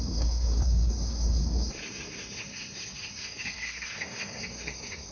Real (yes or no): no